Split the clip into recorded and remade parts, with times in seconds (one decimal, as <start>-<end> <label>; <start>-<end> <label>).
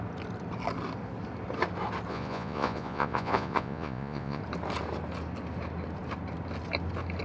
0.0-2.1 recorded; 2.1-4.4 remade; 4.4-7.2 recorded